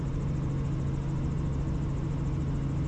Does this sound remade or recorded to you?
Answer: recorded